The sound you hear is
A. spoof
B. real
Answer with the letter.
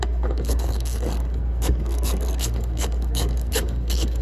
A